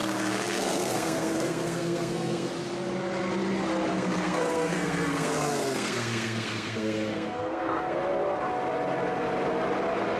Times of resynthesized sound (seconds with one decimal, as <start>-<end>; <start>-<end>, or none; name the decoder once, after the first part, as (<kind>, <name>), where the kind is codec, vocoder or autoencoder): 0.0-2.5 (codec, SNAC); 3.9-8.0